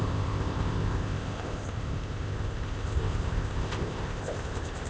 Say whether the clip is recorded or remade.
remade